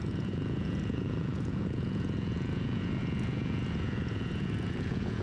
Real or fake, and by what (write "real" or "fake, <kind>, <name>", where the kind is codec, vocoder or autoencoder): fake, vocoder, Vocos